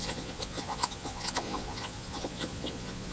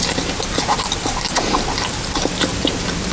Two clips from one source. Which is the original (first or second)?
second